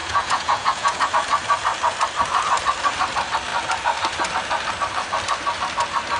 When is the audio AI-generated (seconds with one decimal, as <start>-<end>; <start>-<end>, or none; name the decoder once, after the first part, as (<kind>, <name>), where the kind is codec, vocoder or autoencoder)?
0.0-1.1 (vocoder, Vocos)